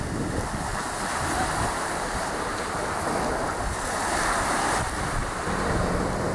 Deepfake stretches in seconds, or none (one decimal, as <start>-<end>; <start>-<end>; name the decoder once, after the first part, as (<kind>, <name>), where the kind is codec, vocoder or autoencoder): 0.7-2.8 (vocoder, BigVGAN v2)